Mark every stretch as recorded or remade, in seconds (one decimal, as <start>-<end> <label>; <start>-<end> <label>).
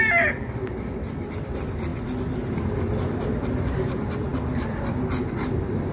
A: 0.0-5.9 recorded